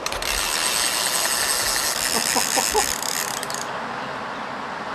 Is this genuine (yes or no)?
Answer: yes